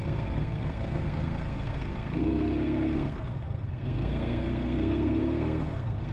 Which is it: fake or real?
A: fake